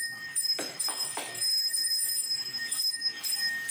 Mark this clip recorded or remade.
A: remade